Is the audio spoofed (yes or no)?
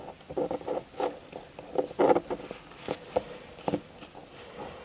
no